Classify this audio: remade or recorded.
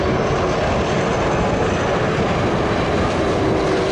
recorded